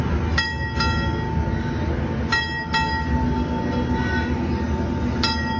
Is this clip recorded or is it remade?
recorded